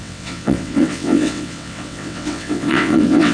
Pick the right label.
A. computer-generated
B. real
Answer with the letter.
A